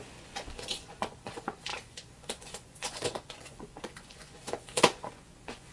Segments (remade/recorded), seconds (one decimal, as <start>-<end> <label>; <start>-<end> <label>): 0.0-5.7 remade